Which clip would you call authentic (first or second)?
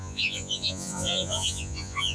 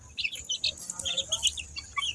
second